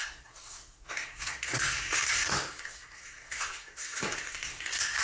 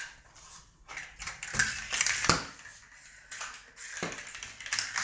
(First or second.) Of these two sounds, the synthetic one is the first